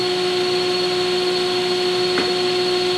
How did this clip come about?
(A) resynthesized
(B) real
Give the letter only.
B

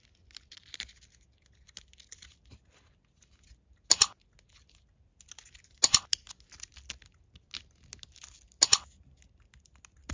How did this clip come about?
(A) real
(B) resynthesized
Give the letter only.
A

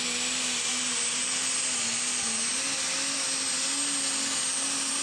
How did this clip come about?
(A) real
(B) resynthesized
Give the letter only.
A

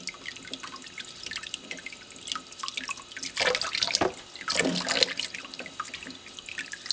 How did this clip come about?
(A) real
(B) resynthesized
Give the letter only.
A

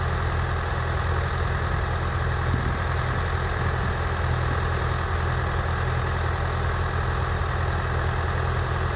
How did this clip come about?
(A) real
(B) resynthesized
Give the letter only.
A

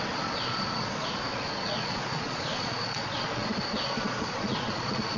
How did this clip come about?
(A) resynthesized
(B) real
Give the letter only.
A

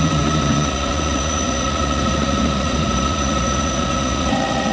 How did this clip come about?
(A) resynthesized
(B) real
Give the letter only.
A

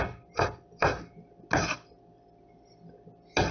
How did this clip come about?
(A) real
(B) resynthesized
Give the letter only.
A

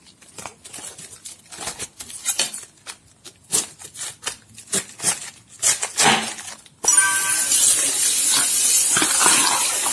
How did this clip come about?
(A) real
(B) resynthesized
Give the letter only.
A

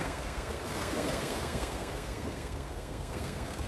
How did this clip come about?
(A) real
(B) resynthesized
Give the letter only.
B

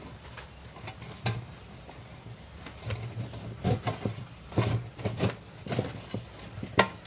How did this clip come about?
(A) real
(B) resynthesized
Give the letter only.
A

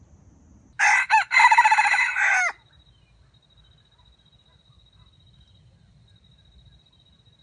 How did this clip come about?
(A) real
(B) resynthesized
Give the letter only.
A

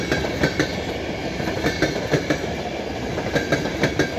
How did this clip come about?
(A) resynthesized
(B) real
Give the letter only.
B